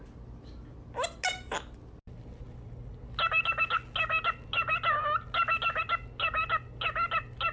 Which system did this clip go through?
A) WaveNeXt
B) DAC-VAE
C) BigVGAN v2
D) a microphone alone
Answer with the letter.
D